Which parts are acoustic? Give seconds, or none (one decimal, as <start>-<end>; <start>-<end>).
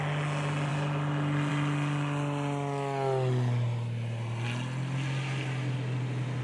0.0-6.4